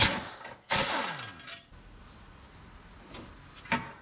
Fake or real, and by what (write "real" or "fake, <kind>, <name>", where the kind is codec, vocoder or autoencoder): real